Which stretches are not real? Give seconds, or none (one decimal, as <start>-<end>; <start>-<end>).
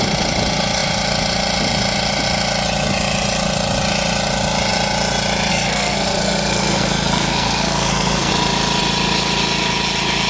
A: 5.5-8.3